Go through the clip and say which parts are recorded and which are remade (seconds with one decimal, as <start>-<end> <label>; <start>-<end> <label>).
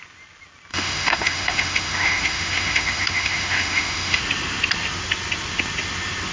0.0-0.7 recorded; 0.7-4.2 remade; 4.2-6.3 recorded